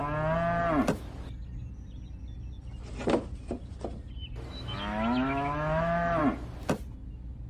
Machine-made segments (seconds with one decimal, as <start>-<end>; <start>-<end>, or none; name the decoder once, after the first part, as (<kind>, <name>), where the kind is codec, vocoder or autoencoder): 4.5-6.2 (autoencoder, DAC-VAE)